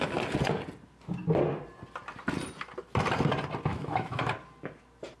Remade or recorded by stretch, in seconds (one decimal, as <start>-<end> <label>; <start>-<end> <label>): 0.0-3.7 recorded; 3.7-4.3 remade; 4.3-5.2 recorded

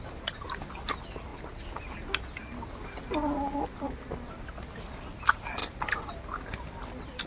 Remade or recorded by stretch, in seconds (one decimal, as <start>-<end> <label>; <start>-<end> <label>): 0.0-7.3 recorded